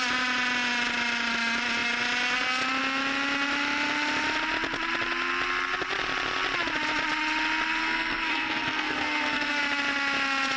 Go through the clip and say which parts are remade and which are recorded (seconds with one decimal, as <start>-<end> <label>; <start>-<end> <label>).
0.0-7.8 recorded; 7.8-9.6 remade; 9.6-10.6 recorded